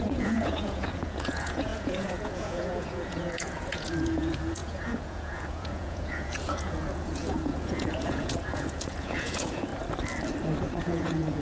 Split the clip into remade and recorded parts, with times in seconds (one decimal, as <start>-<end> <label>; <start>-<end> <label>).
0.0-9.7 remade; 9.7-10.8 recorded; 10.8-11.4 remade